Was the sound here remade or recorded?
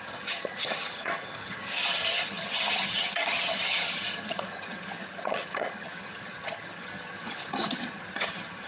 remade